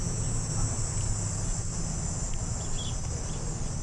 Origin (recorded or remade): recorded